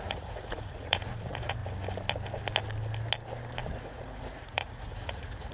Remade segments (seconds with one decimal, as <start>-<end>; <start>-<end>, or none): 0.0-1.6; 3.8-5.5